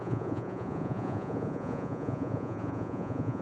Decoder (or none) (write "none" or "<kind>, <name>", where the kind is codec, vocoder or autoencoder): vocoder, Vocos